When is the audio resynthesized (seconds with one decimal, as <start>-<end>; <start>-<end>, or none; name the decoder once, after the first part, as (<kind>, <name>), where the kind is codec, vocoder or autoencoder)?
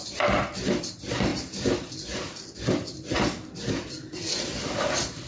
none